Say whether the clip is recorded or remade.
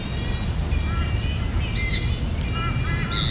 recorded